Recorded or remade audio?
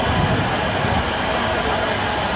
recorded